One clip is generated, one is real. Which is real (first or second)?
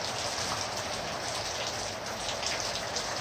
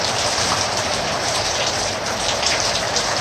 first